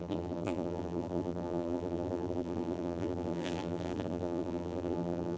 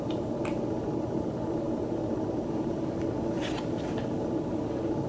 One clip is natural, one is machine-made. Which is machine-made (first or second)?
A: first